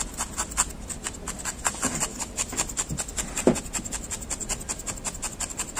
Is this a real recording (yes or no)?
yes